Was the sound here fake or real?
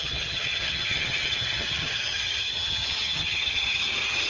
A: fake